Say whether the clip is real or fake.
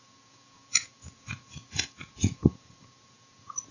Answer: fake